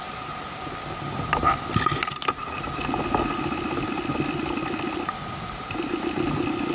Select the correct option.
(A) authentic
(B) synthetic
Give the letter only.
A